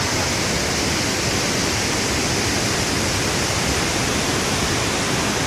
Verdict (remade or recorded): recorded